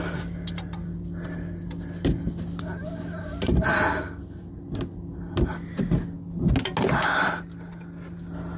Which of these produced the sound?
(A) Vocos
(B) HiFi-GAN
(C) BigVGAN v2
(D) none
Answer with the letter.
D